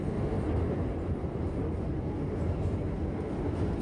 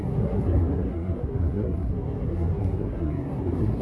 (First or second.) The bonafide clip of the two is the first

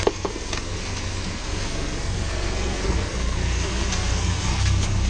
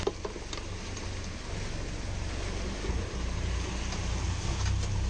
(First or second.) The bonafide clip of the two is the second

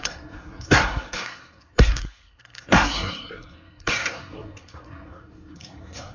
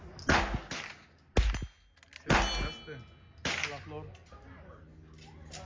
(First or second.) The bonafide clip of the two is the second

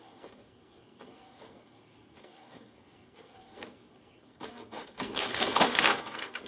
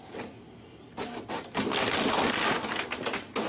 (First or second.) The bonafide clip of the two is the second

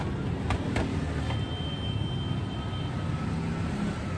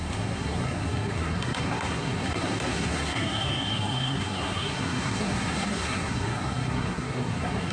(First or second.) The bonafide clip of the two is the first